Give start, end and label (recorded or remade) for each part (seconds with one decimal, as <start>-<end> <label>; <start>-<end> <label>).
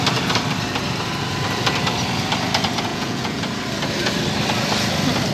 0.0-2.9 recorded; 2.9-3.4 remade; 3.4-5.3 recorded